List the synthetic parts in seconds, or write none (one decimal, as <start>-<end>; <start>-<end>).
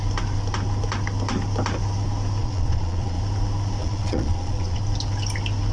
2.4-3.2; 3.8-4.8